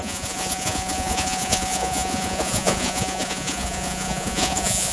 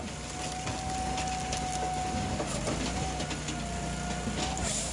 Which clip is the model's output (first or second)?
first